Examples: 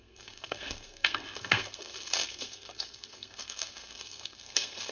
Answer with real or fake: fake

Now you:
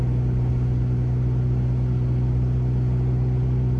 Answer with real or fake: real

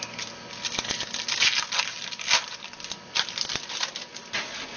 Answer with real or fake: real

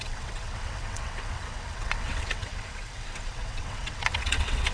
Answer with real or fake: fake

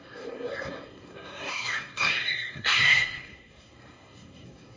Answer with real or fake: fake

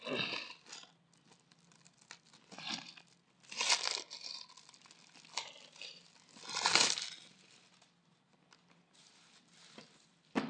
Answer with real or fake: real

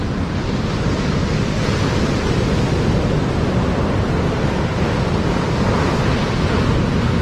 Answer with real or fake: real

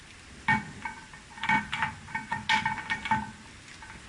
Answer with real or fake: real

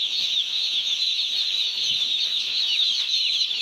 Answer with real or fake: fake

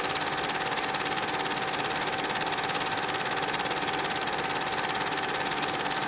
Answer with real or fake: real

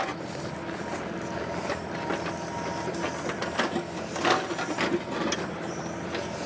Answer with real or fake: real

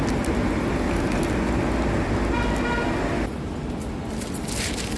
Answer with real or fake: real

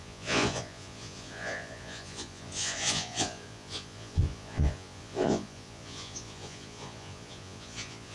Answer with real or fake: fake